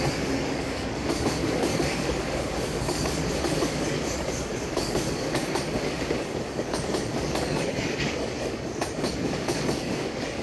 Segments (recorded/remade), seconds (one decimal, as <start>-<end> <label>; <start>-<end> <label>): 0.0-10.4 remade